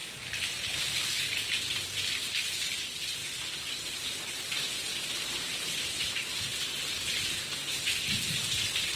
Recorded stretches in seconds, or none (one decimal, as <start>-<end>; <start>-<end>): 0.0-0.8; 2.2-2.7

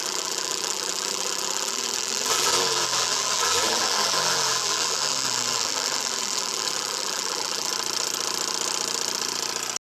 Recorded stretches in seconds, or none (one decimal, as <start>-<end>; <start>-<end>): 7.7-10.0

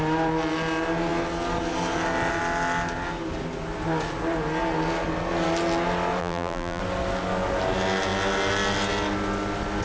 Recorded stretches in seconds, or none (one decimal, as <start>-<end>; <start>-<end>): 0.0-6.2; 6.8-9.8

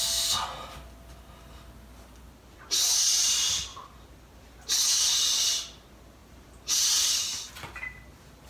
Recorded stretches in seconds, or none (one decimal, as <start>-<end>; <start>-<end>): 0.0-6.2; 7.2-8.5

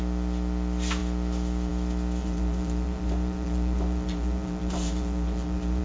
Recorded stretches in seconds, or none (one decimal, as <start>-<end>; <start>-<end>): 0.0-2.2